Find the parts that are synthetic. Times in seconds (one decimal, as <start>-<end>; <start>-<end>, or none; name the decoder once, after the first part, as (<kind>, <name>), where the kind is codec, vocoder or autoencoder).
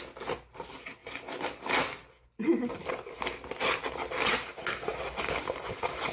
none